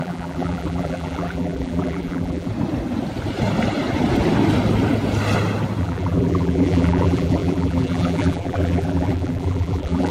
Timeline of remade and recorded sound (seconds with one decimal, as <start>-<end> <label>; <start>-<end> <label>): 0.0-2.5 remade; 2.5-5.8 recorded; 5.8-10.1 remade